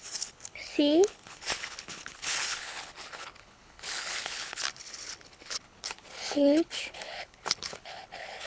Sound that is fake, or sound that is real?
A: fake